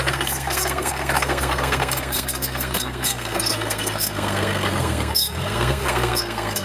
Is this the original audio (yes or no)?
no